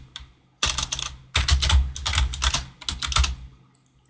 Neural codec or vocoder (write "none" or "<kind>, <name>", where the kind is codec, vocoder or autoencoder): none